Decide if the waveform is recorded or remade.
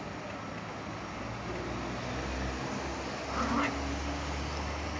recorded